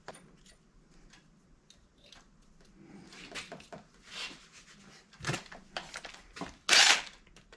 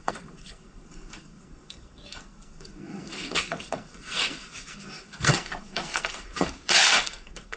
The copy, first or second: second